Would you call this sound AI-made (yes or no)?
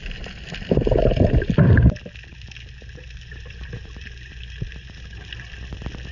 no